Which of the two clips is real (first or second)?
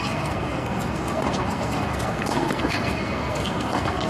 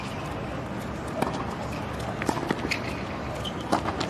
second